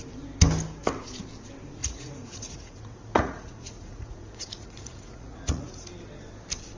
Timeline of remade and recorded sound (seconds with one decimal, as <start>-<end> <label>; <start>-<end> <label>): 0.0-1.8 recorded; 1.8-5.9 remade; 5.9-6.8 recorded